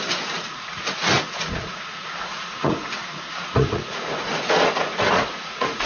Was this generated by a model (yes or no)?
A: yes